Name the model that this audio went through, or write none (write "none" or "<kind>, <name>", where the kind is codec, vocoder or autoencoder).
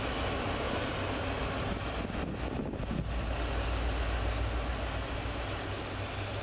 none